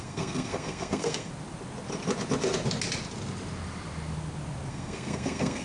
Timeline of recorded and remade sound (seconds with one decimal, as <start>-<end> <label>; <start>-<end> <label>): 0.0-1.3 remade; 1.3-4.7 recorded; 4.7-5.6 remade